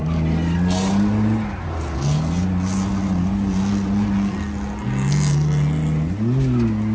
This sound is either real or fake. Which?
real